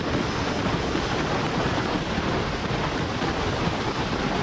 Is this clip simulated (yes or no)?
no